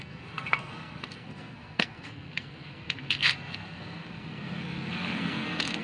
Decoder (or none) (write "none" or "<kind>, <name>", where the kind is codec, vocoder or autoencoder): codec, SNAC